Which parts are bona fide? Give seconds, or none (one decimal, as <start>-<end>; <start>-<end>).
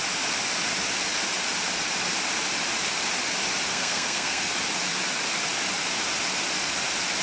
0.0-3.7; 4.5-7.2